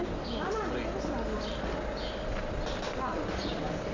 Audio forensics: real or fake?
real